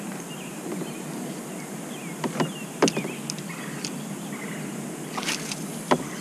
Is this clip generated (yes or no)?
no